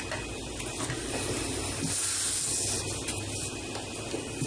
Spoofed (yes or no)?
no